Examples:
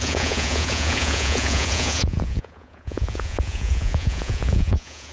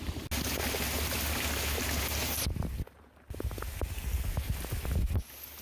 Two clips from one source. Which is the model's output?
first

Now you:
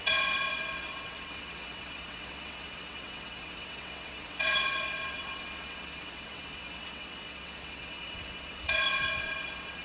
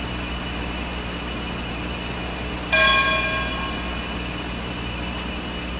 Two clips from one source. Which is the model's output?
first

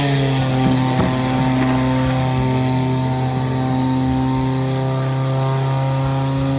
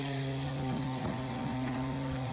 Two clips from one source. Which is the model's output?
second